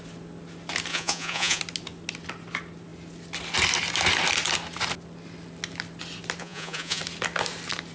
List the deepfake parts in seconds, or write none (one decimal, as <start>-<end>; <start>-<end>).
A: 0.9-1.6; 6.4-7.0